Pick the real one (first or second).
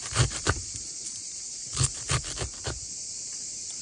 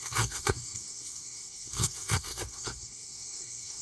first